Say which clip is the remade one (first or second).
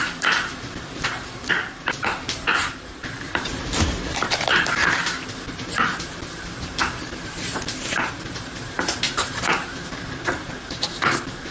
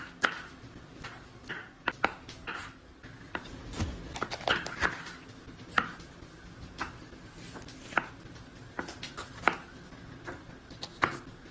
first